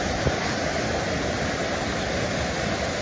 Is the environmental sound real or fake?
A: real